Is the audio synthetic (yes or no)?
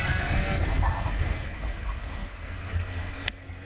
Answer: yes